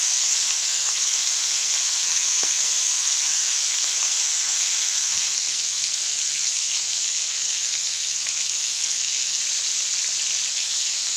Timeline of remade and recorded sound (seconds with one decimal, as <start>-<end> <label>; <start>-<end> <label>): 0.0-9.4 remade; 9.4-10.5 recorded; 10.5-11.2 remade